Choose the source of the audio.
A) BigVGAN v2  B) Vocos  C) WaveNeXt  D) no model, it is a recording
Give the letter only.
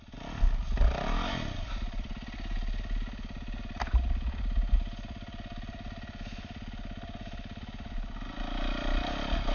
D